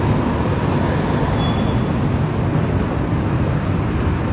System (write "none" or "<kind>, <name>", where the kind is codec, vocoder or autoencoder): none